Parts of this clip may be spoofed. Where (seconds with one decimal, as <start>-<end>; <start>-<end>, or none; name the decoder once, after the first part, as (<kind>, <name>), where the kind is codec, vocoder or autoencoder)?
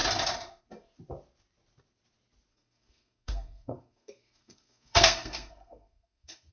2.5-6.5 (codec, SNAC)